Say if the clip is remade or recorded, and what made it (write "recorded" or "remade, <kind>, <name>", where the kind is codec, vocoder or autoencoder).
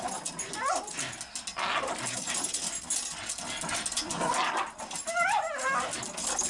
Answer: recorded